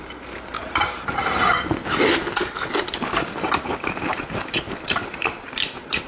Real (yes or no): no